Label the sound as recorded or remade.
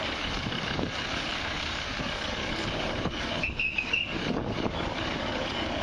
remade